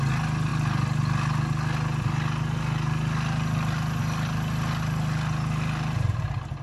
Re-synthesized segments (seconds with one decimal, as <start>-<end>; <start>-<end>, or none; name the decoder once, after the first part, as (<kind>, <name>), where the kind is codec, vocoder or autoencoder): none